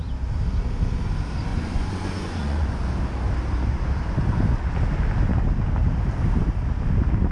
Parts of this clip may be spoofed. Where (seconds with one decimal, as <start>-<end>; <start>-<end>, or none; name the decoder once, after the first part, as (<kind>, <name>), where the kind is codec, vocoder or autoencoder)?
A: 1.5-2.9 (vocoder, Vocos)